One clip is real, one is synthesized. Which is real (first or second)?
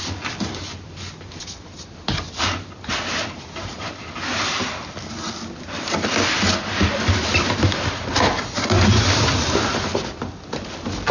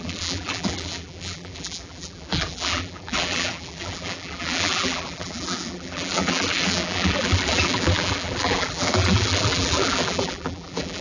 first